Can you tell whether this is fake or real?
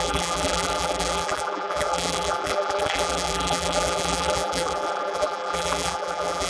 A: fake